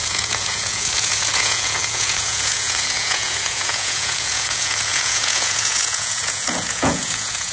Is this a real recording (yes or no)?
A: no